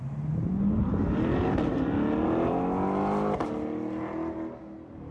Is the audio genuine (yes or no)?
yes